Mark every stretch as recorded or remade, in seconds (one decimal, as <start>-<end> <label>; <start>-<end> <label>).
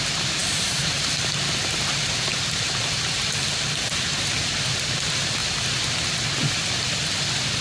0.0-7.6 recorded